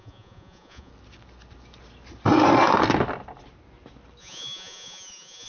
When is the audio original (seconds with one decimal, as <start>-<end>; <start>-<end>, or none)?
0.9-4.2